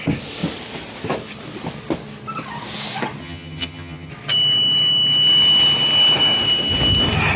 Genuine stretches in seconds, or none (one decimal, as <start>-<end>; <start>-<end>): 0.0-3.2; 4.1-7.4